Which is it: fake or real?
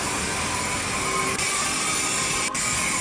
real